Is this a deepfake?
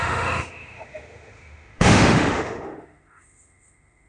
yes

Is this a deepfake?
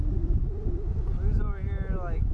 no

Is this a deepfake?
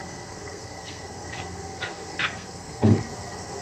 yes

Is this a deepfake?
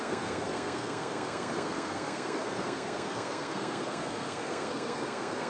yes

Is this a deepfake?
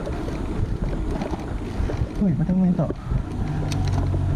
no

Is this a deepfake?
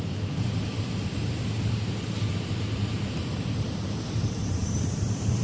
yes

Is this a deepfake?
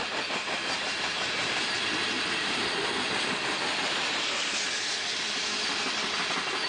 no